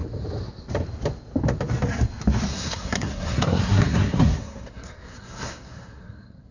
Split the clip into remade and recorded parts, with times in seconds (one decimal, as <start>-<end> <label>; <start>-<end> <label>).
0.0-2.5 recorded; 2.5-6.5 remade